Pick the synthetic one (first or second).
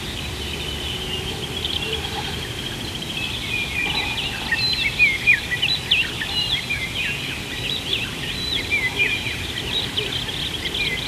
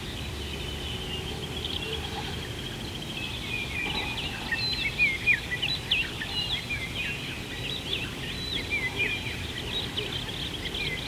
first